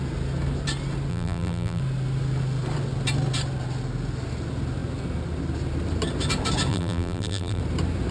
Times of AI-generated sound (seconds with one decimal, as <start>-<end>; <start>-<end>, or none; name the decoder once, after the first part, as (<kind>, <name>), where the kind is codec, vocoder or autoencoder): 1.1-1.8 (vocoder, BigVGAN v2); 6.7-7.6

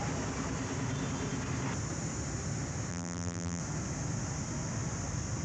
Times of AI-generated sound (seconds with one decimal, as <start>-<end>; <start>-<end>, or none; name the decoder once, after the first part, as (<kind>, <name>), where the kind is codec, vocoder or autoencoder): 2.9-3.6 (vocoder, BigVGAN v2)

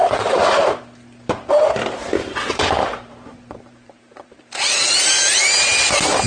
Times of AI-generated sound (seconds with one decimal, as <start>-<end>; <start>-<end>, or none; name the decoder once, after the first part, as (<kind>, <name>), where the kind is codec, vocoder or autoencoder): 0.0-0.8 (vocoder, BigVGAN v2); 2.0-5.8

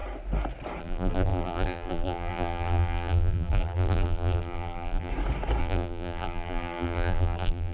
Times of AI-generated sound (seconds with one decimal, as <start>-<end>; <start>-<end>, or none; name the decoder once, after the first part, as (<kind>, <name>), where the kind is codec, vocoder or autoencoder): 0.8-5.1 (vocoder, BigVGAN v2); 5.6-7.7

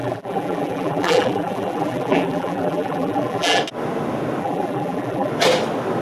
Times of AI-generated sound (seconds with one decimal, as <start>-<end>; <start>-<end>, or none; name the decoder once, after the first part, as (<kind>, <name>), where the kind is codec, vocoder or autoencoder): 0.0-3.6 (vocoder, BigVGAN v2); 4.4-5.3

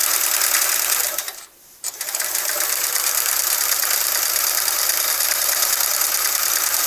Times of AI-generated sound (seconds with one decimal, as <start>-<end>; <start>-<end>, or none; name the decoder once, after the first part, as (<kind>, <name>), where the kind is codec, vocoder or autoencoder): 0.6-6.9 (vocoder, BigVGAN v2)

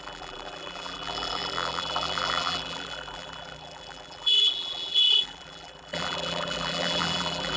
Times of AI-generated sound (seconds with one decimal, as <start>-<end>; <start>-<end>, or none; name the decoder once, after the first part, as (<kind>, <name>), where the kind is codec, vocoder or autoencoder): 0.0-7.6 (vocoder, BigVGAN v2)